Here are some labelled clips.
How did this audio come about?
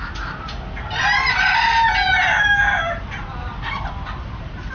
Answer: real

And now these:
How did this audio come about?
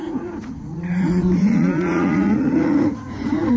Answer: fake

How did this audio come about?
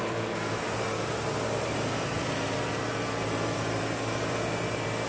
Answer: fake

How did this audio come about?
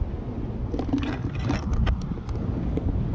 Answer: real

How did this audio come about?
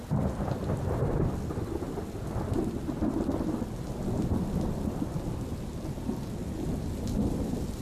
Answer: real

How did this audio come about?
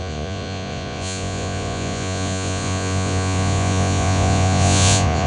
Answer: fake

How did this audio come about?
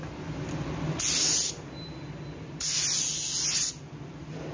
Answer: real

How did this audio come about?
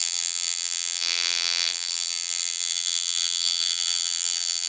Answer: fake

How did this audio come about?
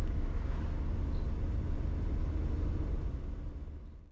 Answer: real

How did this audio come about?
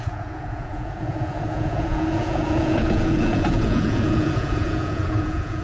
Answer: fake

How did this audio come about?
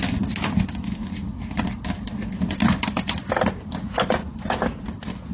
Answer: real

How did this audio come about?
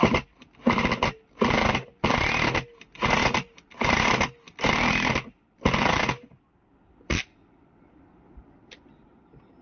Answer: real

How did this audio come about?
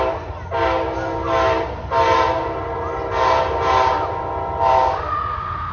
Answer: real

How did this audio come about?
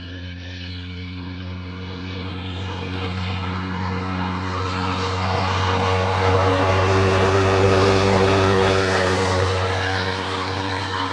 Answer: fake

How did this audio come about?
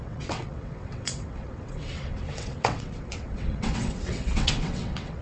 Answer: fake